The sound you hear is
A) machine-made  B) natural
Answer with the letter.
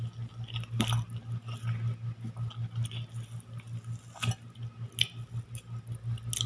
B